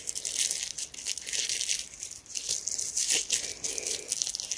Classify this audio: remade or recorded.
recorded